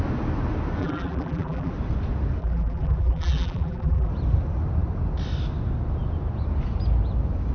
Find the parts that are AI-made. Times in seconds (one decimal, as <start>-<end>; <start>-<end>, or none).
0.8-1.7; 2.4-4.1